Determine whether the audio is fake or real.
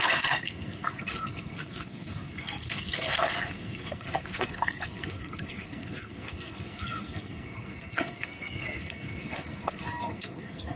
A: fake